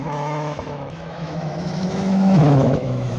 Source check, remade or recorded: remade